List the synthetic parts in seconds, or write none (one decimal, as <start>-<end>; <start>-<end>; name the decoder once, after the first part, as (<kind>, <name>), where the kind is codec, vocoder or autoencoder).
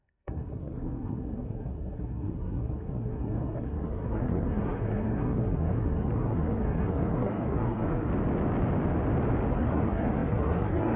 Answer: 0.0-8.1 (codec, SNAC); 9.5-11.0